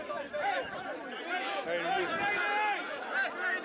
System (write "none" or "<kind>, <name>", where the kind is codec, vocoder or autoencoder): none